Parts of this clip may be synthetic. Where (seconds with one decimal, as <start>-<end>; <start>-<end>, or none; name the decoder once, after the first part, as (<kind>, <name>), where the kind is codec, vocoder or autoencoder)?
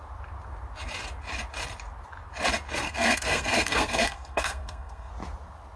2.8-5.1 (codec, SNAC)